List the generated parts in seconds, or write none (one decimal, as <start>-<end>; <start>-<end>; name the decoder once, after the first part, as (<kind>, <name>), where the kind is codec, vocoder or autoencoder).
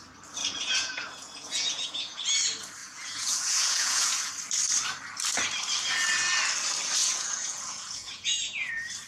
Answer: 0.4-2.2 (vocoder, Vocos); 2.8-4.3; 7.0-8.7